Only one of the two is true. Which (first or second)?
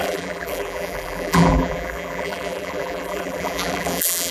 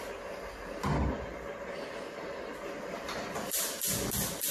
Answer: second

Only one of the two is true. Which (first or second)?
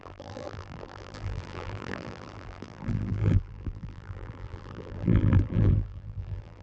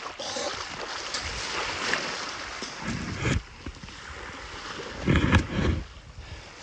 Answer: second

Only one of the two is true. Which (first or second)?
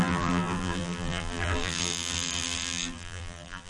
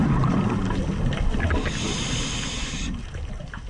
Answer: second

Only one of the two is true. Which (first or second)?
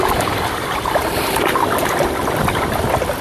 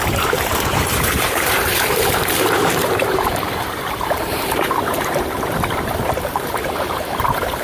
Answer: first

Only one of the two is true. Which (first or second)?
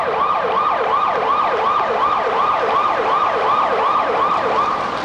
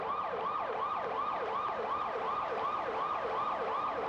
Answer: second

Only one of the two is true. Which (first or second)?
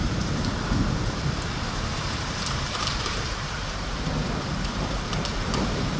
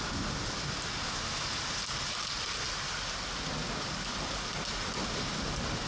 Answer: second